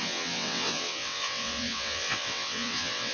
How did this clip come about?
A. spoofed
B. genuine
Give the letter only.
A